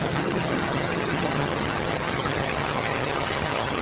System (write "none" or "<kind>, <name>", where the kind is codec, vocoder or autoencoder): vocoder, HiFi-GAN